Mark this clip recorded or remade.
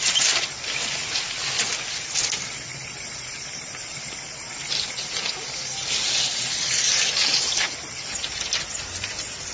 recorded